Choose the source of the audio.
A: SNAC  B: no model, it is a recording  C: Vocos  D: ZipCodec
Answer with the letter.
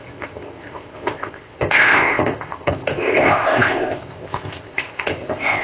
D